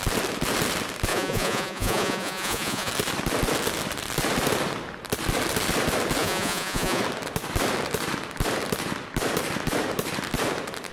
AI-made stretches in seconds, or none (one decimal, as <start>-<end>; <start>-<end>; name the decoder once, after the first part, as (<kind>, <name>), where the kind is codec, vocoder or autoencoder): 1.1-2.9 (vocoder, Vocos); 6.2-7.0